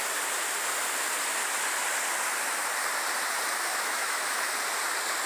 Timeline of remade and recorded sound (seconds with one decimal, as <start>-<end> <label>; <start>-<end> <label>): 0.0-3.7 recorded; 3.7-4.4 remade; 4.4-5.3 recorded